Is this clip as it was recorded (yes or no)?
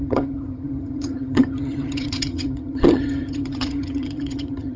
no